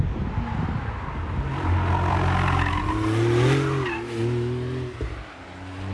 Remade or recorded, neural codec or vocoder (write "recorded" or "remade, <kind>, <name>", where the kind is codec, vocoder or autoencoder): recorded